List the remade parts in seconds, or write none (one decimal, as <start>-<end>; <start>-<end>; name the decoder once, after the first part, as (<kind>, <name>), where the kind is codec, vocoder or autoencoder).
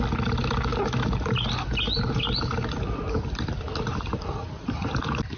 none